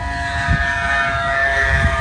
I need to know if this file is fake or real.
fake